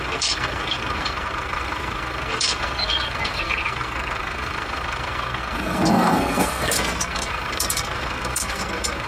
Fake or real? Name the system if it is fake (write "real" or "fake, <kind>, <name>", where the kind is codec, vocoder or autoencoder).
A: fake, codec, SNAC